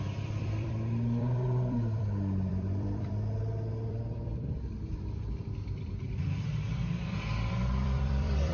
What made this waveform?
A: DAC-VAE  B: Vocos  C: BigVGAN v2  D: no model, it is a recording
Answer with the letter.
C